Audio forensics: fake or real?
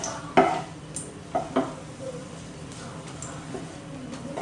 real